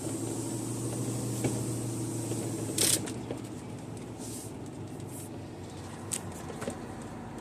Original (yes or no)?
yes